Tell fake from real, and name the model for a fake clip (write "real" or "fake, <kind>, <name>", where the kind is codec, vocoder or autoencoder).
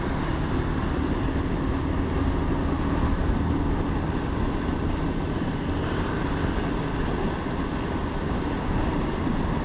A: real